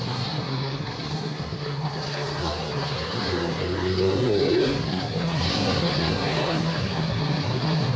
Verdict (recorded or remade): remade